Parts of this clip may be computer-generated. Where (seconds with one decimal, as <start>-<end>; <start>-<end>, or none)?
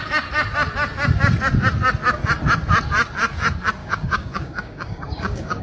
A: 3.8-5.6